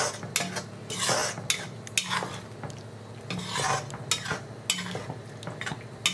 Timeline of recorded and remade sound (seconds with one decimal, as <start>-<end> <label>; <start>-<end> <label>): 0.0-6.1 recorded